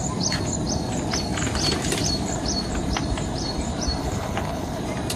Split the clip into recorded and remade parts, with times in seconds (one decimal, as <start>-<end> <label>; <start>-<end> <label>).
0.0-4.0 recorded; 4.0-4.8 remade; 4.8-5.2 recorded